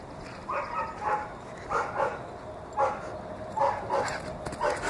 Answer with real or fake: real